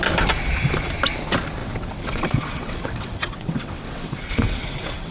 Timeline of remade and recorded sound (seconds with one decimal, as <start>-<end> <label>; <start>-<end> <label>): 0.0-1.6 recorded; 1.6-5.1 remade